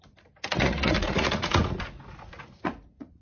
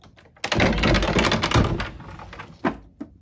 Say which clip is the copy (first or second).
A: first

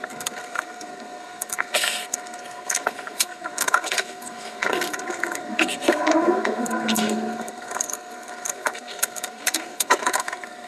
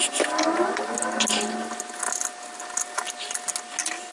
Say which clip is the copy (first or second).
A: first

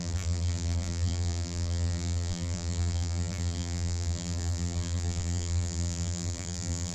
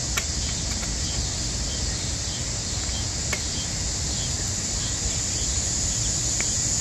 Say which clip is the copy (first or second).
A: first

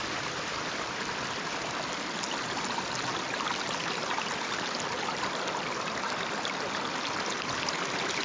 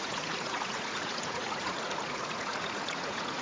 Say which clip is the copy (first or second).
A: second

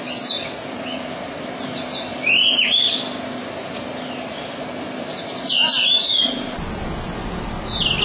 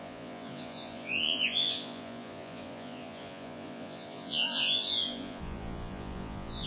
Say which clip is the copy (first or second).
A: second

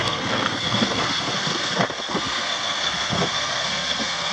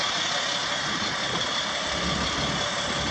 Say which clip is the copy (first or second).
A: first